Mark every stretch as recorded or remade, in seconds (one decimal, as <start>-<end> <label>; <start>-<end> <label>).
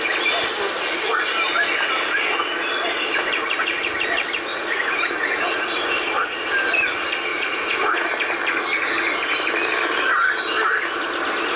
0.0-4.5 recorded; 4.5-5.9 remade; 5.9-7.3 recorded; 7.3-8.1 remade; 8.1-11.6 recorded